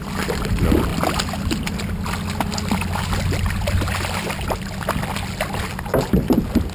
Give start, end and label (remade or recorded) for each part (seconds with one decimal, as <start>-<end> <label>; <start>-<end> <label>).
0.0-6.7 recorded

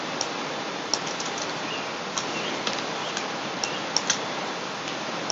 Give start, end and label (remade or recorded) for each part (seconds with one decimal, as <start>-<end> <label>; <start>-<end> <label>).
0.0-5.3 recorded

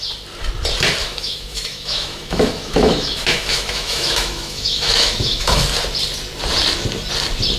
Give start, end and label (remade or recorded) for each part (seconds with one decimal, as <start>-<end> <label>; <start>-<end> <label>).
0.0-1.0 recorded; 1.0-5.6 remade; 5.6-7.6 recorded

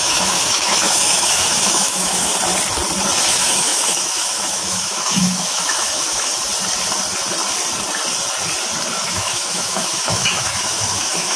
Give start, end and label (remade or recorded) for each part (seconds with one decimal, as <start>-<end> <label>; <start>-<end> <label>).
0.0-2.3 remade; 2.3-3.2 recorded; 3.2-6.3 remade; 6.3-8.9 recorded; 8.9-11.4 remade

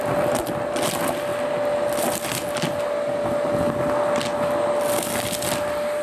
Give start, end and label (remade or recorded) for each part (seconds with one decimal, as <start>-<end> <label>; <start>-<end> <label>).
0.0-6.0 recorded

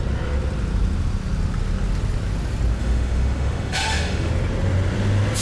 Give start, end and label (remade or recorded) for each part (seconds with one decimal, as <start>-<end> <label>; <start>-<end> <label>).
0.0-2.8 recorded; 2.8-4.3 remade; 4.3-5.4 recorded

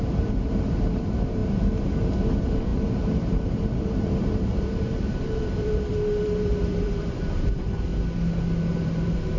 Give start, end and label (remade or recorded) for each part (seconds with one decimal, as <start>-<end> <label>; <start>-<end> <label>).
0.0-7.9 remade; 7.9-8.7 recorded; 8.7-9.4 remade